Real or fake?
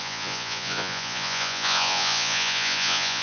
fake